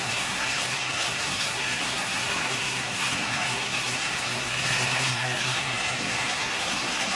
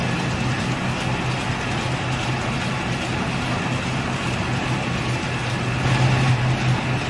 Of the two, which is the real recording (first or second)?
second